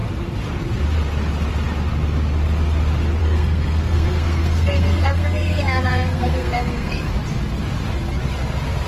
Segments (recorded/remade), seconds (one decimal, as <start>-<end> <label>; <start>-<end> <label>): 0.0-3.2 recorded; 3.2-7.1 remade; 7.1-8.9 recorded